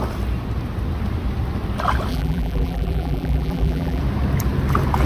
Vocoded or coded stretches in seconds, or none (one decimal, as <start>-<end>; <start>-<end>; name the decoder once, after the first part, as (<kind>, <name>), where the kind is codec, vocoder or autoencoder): 2.1-4.0 (vocoder, BigVGAN v2)